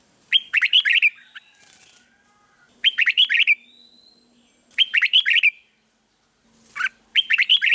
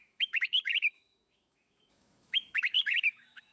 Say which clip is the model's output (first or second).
second